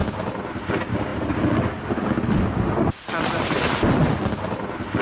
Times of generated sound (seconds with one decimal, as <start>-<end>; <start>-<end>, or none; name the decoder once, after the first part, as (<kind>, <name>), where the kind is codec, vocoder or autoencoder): none